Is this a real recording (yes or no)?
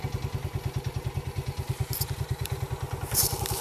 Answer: yes